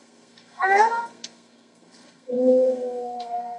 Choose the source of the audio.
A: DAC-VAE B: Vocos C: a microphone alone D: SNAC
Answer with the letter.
D